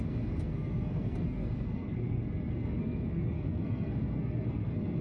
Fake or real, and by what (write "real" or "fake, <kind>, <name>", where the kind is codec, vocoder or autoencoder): fake, codec, SNAC